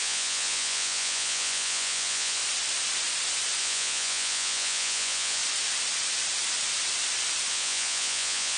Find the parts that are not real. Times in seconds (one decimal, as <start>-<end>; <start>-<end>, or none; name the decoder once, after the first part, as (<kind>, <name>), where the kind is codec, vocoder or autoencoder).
0.0-2.4 (vocoder, Vocos); 3.6-5.4; 7.5-8.6